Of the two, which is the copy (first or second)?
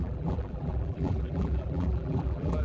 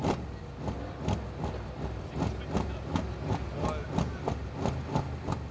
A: first